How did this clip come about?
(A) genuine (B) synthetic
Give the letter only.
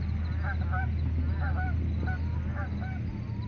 A